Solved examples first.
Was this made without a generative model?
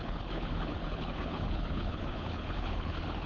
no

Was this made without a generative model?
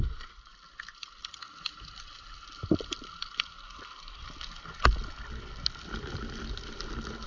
yes